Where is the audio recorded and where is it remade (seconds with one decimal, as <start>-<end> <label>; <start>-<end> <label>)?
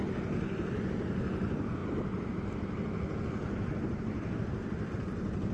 0.0-5.5 recorded